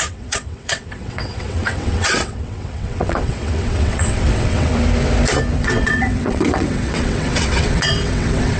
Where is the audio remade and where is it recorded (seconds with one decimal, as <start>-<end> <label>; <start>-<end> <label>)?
0.0-4.7 remade; 4.7-5.6 recorded; 5.6-8.6 remade